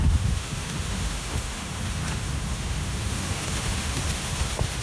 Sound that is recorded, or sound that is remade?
remade